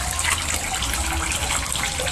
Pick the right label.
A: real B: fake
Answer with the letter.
A